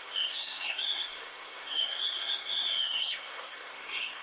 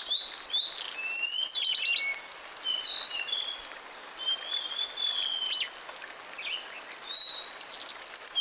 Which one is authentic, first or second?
second